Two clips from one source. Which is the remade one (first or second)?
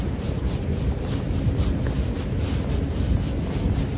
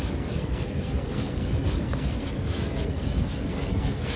second